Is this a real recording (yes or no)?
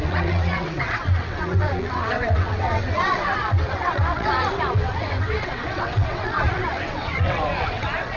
no